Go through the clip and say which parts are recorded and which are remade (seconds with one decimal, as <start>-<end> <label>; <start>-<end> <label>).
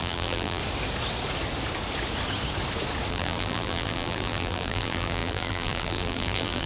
0.0-0.6 remade; 0.6-3.1 recorded; 3.1-6.7 remade